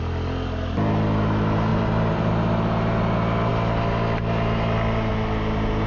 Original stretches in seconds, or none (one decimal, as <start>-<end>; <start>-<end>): 0.0-1.7; 2.3-5.9

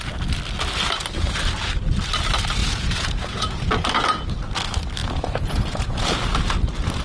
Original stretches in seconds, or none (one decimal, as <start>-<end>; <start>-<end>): 0.0-2.6; 3.7-5.0; 6.1-7.0